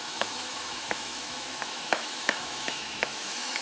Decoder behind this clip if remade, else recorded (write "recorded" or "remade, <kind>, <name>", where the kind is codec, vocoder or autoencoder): remade, autoencoder, DAC-VAE